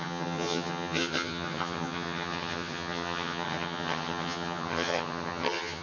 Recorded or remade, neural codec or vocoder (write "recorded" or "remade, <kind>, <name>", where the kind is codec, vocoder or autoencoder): remade, vocoder, HiFi-GAN